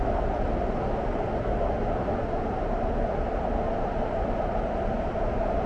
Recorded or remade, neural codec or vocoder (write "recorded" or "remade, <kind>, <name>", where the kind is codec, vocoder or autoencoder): recorded